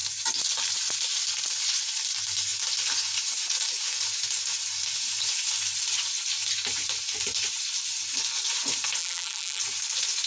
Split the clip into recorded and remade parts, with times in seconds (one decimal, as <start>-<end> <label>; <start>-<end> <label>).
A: 0.0-9.0 recorded; 9.0-9.6 remade; 9.6-10.3 recorded